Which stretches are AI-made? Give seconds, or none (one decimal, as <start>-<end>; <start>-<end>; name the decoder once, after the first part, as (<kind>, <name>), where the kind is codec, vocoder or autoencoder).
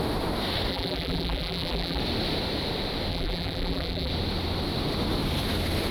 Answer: 0.7-2.0 (vocoder, BigVGAN v2); 3.1-4.1